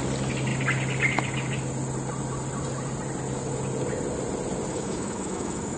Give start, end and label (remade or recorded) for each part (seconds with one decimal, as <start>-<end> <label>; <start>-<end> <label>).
0.0-4.7 recorded; 4.7-5.8 remade